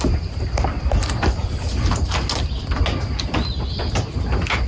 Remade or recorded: recorded